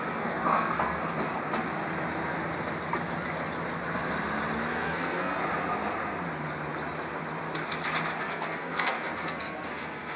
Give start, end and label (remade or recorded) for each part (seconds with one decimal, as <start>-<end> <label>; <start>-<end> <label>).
0.0-1.0 remade; 1.0-4.7 recorded; 4.7-5.4 remade; 5.4-8.2 recorded; 8.2-10.2 remade